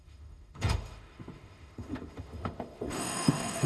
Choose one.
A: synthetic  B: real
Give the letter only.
A